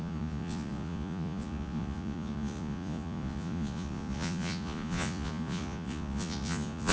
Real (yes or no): no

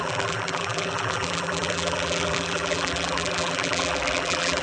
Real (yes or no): no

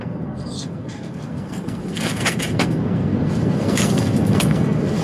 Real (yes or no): no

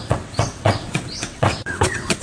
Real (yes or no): no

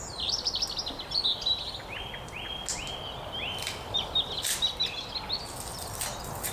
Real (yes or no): yes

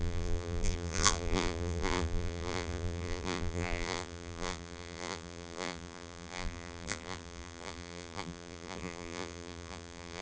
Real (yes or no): no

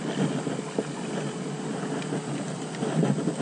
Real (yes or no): yes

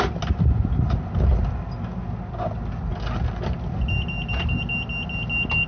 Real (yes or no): yes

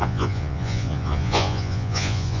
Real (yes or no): no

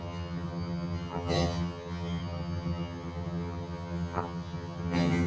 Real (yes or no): no